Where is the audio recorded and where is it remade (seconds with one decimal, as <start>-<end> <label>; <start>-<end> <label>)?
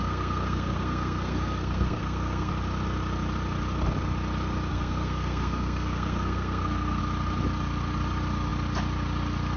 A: 0.0-2.5 remade; 2.5-4.7 recorded; 4.7-7.0 remade; 7.0-9.6 recorded